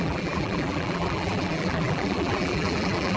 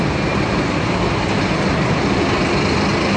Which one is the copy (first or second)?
first